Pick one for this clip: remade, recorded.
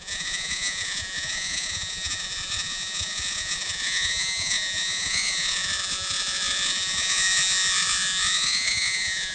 remade